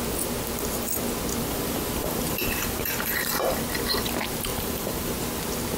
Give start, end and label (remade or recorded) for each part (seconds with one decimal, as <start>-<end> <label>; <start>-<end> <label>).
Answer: 0.0-1.4 recorded; 1.4-3.6 remade; 3.6-4.5 recorded; 4.5-5.2 remade; 5.2-5.8 recorded